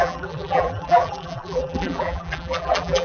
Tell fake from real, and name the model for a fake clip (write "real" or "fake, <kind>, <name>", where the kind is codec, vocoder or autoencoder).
fake, vocoder, BigVGAN v2